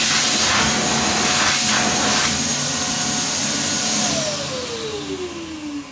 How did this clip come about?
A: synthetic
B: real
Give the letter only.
B